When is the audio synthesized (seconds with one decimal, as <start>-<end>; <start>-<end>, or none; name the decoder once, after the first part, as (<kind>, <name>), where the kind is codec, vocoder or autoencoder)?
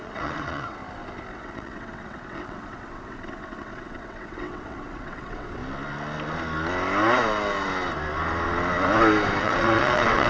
0.0-0.8 (vocoder, WaveNeXt); 1.3-5.6; 9.4-10.3